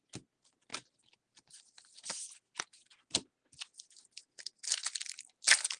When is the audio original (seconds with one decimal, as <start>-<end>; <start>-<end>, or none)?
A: 0.0-5.8